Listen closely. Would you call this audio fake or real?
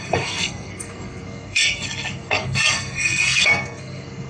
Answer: fake